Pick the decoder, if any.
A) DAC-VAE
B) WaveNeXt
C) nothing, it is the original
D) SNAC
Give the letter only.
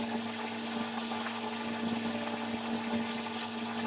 C